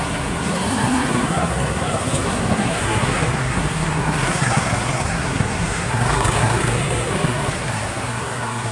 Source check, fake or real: fake